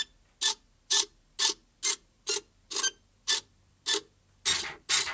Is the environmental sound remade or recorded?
recorded